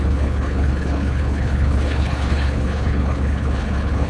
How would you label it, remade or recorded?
remade